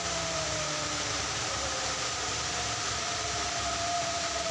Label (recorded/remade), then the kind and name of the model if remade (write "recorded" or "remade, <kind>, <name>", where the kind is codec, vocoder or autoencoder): remade, vocoder, BigVGAN v2